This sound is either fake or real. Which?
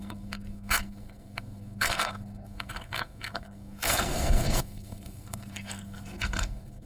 fake